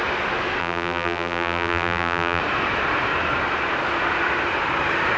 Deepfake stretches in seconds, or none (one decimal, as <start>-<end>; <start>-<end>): 0.6-2.4